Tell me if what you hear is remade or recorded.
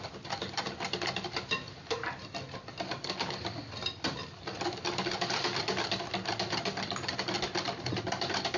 remade